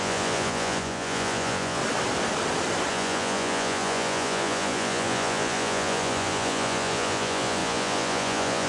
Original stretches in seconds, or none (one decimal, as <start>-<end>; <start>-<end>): 1.8-2.9